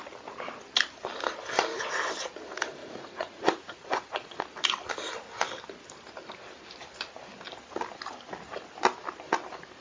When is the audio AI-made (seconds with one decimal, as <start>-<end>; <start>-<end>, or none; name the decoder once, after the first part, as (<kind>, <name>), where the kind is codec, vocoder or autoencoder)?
2.8-4.4 (vocoder, Vocos)